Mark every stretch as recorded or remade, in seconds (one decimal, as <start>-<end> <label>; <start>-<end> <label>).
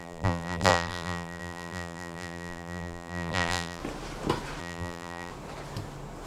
0.0-3.8 remade; 3.8-4.6 recorded; 4.6-5.3 remade; 5.3-6.3 recorded